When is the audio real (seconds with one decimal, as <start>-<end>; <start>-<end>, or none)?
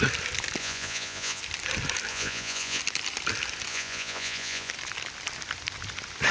0.0-0.6; 1.4-2.1; 2.8-3.7; 4.7-6.3